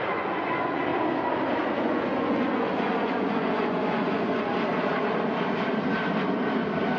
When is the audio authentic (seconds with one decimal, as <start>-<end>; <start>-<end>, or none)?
0.9-1.6; 4.5-7.0